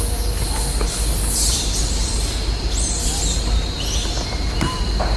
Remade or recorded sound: recorded